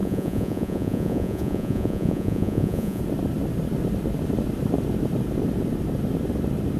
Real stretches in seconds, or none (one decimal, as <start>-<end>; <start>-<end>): 3.0-6.8